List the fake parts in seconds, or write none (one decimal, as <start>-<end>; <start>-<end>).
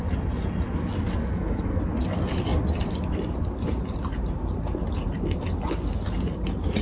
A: 1.2-1.8